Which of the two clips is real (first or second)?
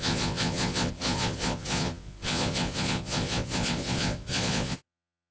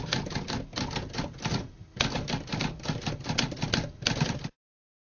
second